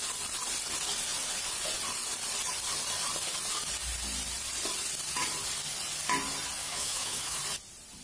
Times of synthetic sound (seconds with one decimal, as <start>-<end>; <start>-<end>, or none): 6.6-7.4